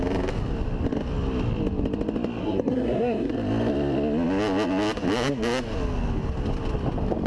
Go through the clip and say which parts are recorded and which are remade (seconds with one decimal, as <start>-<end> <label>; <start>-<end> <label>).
0.0-2.4 recorded; 2.4-3.3 remade; 3.3-7.3 recorded